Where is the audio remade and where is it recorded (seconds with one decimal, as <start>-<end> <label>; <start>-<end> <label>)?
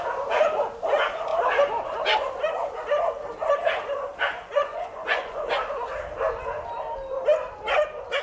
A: 0.0-4.1 recorded; 4.1-5.5 remade; 5.5-8.2 recorded